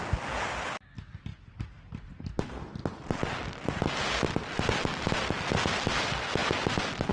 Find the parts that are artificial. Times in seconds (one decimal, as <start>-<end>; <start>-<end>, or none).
none